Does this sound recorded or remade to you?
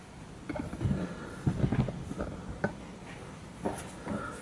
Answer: recorded